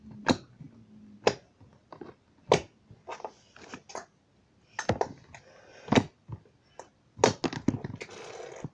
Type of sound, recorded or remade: recorded